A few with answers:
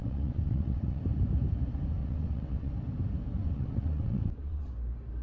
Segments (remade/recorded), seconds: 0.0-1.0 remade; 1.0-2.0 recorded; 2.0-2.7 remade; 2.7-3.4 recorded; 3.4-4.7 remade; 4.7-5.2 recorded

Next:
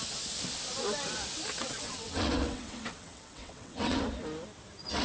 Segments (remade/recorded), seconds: 0.0-1.5 recorded; 1.5-4.0 remade; 4.0-5.0 recorded

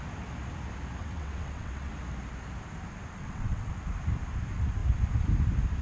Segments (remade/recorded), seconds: 0.0-1.0 recorded; 1.0-1.9 remade; 1.9-3.2 recorded; 3.2-3.7 remade; 3.7-5.8 recorded

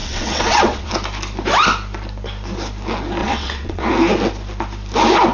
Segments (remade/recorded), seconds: 0.0-0.9 remade; 0.9-3.2 recorded; 3.2-3.9 remade; 3.9-5.3 recorded

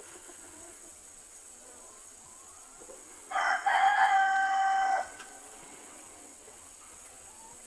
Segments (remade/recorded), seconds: 0.0-7.7 remade

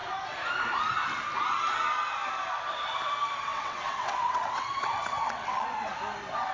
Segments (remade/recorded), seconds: 0.0-3.5 recorded; 3.5-5.9 remade; 5.9-6.5 recorded

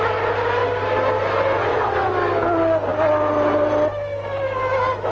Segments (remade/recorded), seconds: 0.0-1.6 recorded; 1.6-2.1 remade; 2.1-5.1 recorded